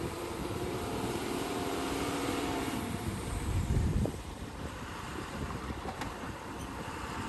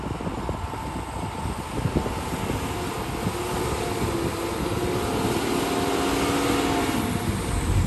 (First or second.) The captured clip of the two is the second